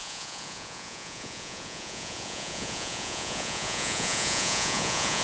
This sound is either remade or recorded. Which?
remade